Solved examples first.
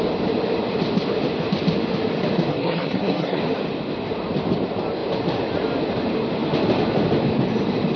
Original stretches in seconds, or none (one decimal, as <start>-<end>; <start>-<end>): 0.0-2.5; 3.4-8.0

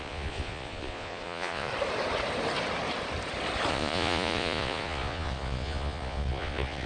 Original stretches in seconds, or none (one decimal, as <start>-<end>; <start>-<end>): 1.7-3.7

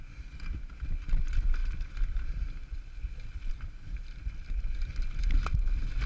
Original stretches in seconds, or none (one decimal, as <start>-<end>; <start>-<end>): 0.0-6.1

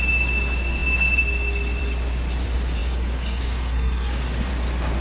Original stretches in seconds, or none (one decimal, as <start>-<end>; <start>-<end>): 0.0-2.8; 4.5-5.0

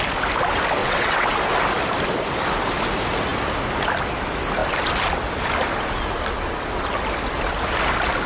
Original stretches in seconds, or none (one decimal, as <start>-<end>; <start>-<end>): 0.0-0.8; 1.3-8.3

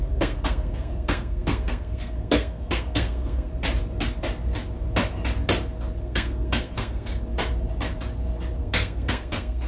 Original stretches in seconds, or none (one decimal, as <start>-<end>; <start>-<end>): 3.5-6.0; 7.1-8.6

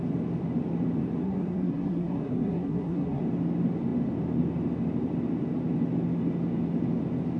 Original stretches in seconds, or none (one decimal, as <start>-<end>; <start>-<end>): 0.0-1.2; 3.2-7.4

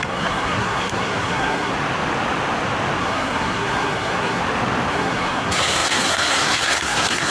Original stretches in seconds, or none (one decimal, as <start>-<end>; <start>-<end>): 1.7-3.0; 4.4-4.9